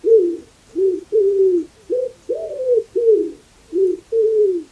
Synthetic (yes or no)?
no